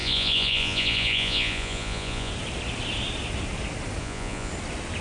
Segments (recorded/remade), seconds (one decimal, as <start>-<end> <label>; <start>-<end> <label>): 0.0-2.3 remade; 2.3-4.0 recorded; 4.0-4.5 remade; 4.5-5.0 recorded